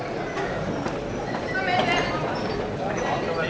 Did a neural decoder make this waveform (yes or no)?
no